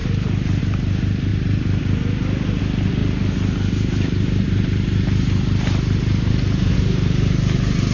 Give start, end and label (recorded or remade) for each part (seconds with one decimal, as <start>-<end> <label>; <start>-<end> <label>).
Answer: 0.0-3.0 remade; 3.0-3.7 recorded; 3.7-7.9 remade